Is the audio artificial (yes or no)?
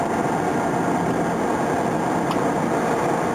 no